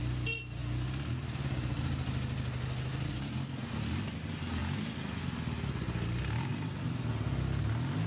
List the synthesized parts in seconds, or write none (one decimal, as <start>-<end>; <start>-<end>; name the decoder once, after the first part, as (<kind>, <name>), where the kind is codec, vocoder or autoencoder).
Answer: none